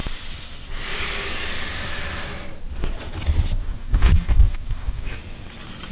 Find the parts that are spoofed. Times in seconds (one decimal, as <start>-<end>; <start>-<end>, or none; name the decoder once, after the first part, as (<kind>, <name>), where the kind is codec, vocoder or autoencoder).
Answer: 3.6-5.2 (codec, DAC)